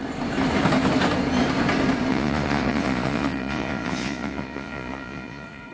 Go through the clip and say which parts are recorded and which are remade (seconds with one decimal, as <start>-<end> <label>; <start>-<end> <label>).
0.0-2.1 recorded; 2.1-5.7 remade